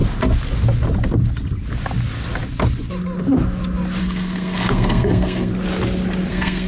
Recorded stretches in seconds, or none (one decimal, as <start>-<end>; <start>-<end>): 0.0-4.0; 5.5-6.3